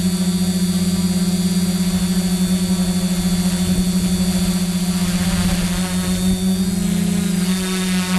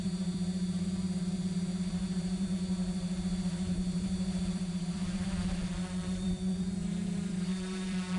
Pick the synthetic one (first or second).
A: second